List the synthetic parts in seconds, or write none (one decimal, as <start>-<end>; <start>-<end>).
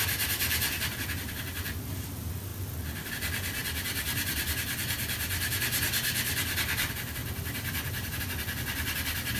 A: none